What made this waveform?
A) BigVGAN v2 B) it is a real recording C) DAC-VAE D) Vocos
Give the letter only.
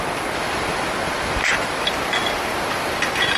A